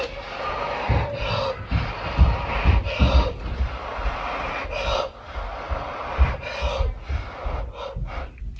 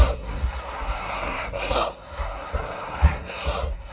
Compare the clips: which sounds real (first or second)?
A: first